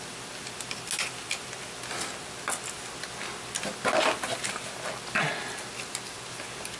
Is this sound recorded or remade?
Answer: recorded